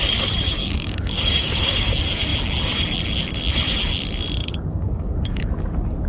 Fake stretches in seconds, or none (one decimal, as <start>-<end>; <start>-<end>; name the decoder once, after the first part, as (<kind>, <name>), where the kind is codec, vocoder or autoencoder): 0.6-1.9 (codec, DAC); 4.4-5.5